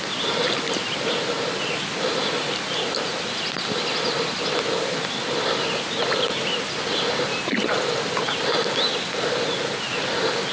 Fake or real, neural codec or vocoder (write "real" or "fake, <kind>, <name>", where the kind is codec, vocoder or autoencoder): real